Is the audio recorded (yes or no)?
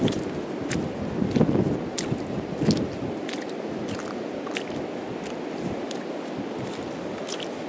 yes